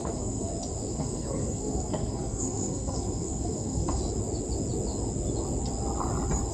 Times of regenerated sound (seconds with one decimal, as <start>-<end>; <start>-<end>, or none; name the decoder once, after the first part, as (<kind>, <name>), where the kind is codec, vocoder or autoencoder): 0.0-0.5 (codec, SNAC); 0.9-4.0